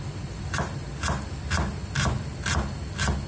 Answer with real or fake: real